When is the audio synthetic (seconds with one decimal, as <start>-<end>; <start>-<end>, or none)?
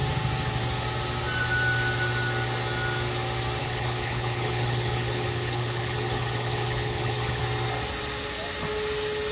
3.6-7.4